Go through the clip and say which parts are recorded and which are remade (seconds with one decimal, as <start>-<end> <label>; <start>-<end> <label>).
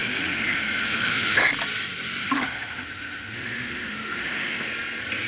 0.0-1.4 remade; 1.4-2.2 recorded; 2.2-4.7 remade; 4.7-5.3 recorded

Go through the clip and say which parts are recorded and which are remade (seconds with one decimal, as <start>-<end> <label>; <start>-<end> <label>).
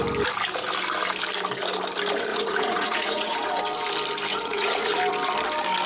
0.0-2.3 recorded; 2.3-3.6 remade; 3.6-4.3 recorded; 4.3-5.0 remade; 5.0-5.9 recorded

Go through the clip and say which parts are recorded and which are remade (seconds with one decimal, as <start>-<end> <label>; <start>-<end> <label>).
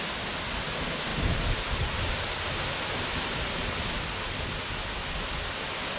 0.0-1.1 recorded; 1.1-4.7 remade; 4.7-6.0 recorded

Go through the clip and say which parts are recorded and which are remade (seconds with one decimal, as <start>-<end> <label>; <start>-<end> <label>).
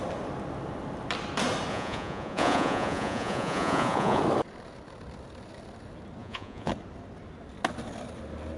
0.0-1.7 recorded; 1.7-4.2 remade; 4.2-6.2 recorded; 6.2-6.7 remade; 6.7-8.6 recorded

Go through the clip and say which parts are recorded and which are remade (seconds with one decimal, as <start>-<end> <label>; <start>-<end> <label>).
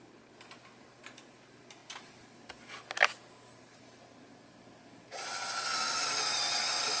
0.0-7.0 recorded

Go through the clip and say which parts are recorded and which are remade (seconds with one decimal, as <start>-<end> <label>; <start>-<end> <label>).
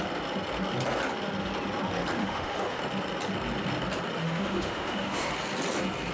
0.0-2.2 recorded; 2.2-2.8 remade; 2.8-4.2 recorded; 4.2-5.3 remade; 5.3-6.1 recorded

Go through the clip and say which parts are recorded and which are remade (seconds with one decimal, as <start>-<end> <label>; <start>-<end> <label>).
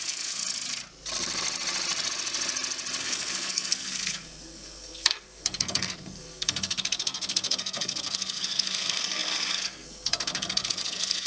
0.0-0.4 remade; 0.4-3.0 recorded; 3.0-11.3 remade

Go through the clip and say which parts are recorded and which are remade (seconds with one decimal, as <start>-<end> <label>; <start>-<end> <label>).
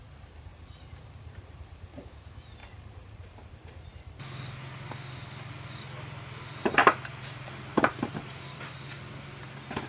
0.0-0.5 recorded; 0.5-2.1 remade; 2.1-2.6 recorded; 2.6-3.9 remade; 3.9-6.8 recorded; 6.8-8.5 remade; 8.5-9.9 recorded